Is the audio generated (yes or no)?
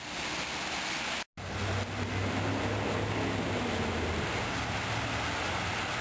no